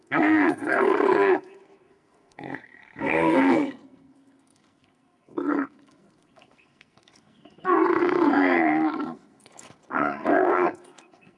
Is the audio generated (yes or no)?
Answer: yes